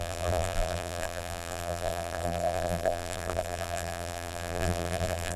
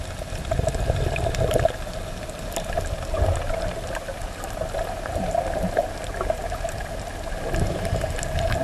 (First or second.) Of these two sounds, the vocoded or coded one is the first